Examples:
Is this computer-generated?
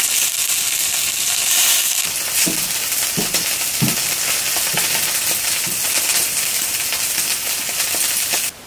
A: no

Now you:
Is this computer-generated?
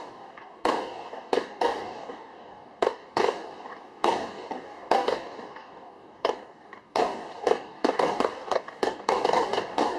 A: yes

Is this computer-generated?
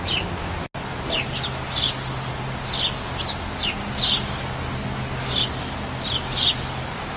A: no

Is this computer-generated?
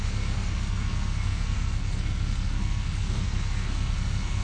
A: yes